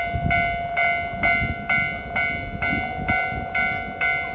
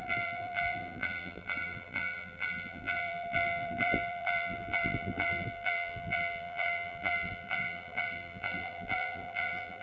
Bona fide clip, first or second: first